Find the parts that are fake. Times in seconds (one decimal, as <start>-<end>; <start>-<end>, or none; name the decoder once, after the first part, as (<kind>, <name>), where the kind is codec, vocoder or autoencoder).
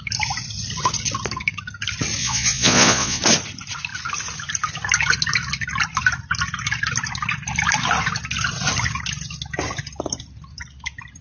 2.2-3.2 (vocoder, Vocos)